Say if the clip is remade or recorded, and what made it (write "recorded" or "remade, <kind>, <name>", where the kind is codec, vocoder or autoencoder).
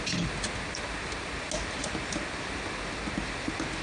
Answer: recorded